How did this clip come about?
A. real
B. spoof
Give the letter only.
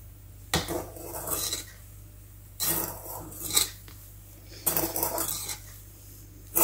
A